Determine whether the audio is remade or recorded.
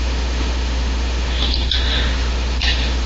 remade